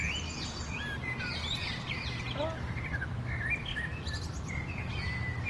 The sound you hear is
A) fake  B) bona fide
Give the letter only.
B